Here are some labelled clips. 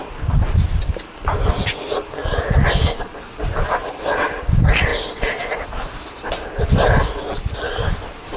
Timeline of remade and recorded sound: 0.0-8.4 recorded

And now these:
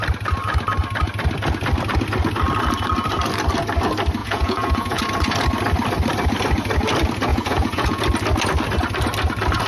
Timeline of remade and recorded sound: 0.0-4.2 recorded; 4.2-5.0 remade; 5.0-7.3 recorded; 7.3-8.0 remade; 8.0-9.7 recorded

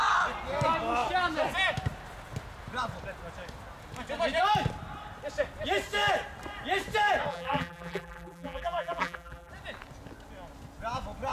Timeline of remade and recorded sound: 0.0-7.3 recorded; 7.3-9.5 remade; 9.5-11.3 recorded

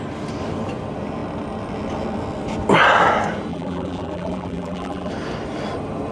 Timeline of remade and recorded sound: 0.0-3.5 recorded; 3.5-5.1 remade; 5.1-6.1 recorded

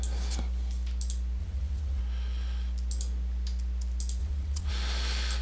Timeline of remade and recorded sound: 0.0-1.4 recorded; 1.4-2.0 remade; 2.0-4.2 recorded; 4.2-4.7 remade; 4.7-5.4 recorded

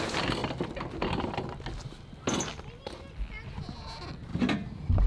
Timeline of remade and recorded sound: 0.0-4.3 recorded; 4.3-5.1 remade